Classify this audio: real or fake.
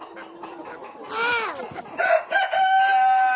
real